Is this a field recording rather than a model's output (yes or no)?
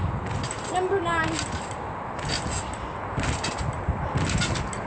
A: yes